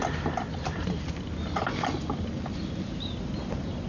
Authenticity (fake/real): real